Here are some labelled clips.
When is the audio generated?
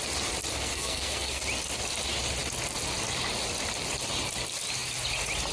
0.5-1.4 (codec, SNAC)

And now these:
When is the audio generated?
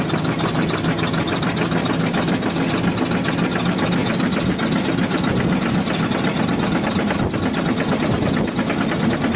none